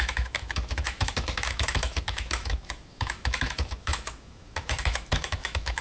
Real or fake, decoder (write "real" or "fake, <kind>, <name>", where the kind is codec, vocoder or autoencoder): fake, autoencoder, DAC-VAE